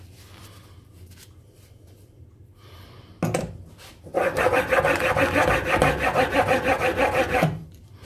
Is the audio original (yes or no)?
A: yes